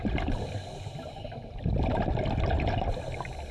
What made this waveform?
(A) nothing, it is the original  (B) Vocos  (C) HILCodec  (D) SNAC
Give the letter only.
A